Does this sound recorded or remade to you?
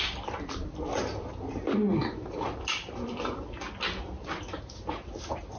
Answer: recorded